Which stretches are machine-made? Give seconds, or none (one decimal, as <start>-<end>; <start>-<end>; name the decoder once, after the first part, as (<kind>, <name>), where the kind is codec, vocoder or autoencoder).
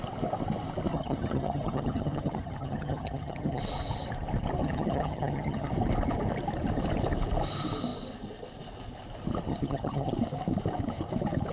0.9-3.6 (vocoder, HiFi-GAN); 4.6-5.7; 9.5-10.1